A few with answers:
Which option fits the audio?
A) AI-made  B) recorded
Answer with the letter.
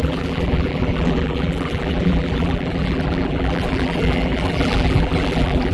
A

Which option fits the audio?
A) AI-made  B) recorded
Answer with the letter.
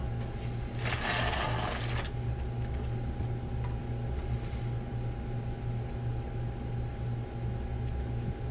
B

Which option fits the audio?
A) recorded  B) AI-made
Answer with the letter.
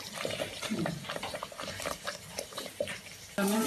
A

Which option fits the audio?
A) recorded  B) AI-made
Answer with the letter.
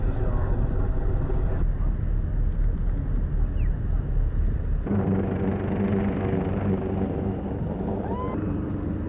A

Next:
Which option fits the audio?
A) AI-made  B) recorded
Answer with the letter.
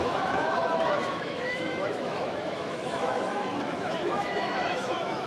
A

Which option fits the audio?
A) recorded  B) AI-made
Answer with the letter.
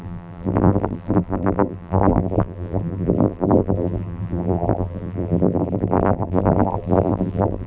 B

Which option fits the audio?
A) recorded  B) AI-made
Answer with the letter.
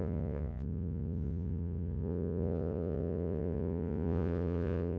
B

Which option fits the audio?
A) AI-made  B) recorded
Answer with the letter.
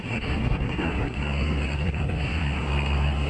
A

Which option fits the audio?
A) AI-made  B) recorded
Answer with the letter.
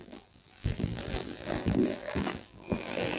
A